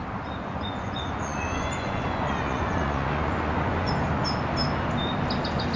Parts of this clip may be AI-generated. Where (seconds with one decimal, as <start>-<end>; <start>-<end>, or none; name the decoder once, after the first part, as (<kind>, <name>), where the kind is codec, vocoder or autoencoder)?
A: 0.4-3.9 (vocoder, Vocos)